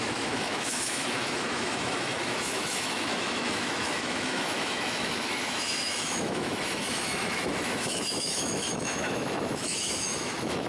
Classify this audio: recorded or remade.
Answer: remade